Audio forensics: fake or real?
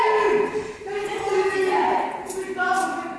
real